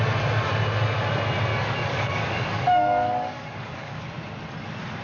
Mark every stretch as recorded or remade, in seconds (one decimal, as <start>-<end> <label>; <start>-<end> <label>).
0.0-1.5 recorded; 1.5-4.0 remade; 4.0-5.0 recorded